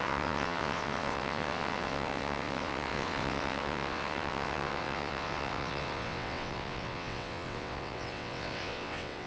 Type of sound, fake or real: fake